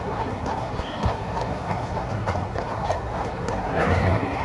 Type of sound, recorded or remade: remade